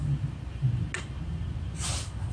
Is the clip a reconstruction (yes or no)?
no